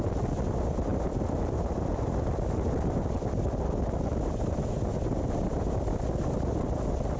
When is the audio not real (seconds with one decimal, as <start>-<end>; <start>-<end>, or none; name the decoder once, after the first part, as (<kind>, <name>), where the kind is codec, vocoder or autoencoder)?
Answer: none